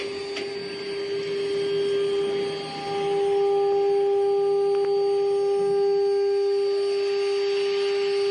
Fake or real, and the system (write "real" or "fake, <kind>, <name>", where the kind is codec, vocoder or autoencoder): real